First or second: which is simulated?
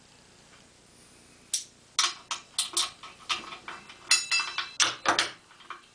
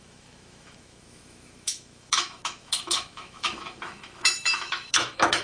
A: second